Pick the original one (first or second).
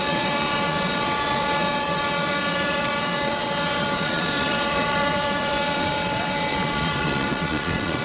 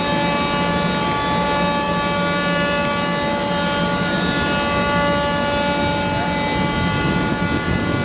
second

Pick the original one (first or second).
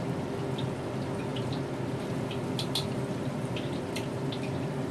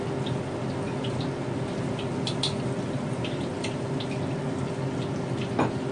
second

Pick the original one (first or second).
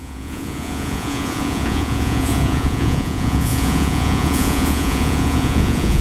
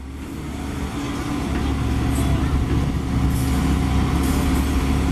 second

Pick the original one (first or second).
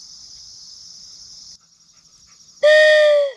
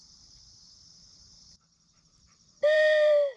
first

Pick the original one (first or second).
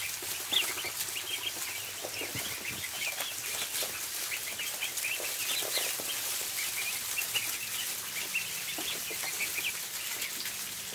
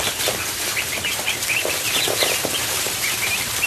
first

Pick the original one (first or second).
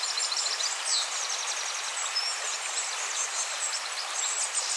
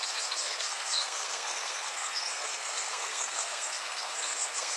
first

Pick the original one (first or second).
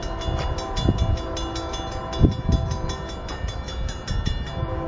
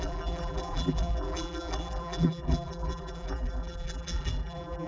first